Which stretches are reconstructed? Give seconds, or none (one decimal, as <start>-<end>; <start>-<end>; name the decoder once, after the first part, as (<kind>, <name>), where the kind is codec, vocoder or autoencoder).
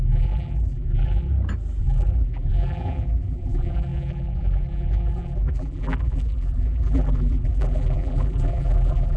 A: 0.0-1.3 (vocoder, BigVGAN v2); 1.8-9.2